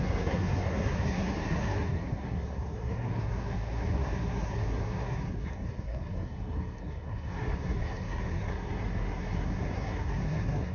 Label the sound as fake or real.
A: fake